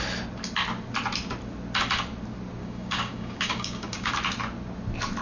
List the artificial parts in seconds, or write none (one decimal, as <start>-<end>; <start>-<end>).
2.6-4.1